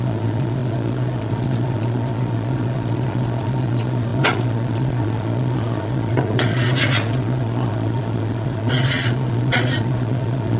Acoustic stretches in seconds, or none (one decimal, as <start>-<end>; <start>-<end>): none